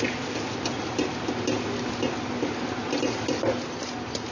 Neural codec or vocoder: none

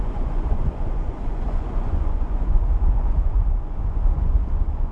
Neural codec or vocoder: vocoder, Vocos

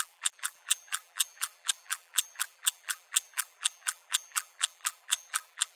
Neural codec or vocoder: vocoder, BigVGAN v2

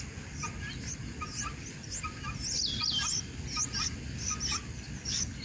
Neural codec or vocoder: none